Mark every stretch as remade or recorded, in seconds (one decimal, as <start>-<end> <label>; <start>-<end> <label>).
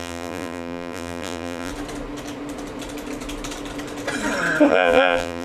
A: 0.0-1.7 remade; 1.7-4.7 recorded; 4.7-5.4 remade